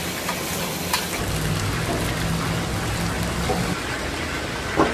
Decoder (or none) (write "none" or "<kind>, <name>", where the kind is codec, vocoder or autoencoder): none